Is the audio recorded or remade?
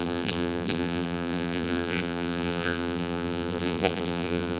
remade